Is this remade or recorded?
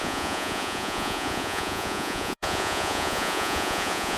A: remade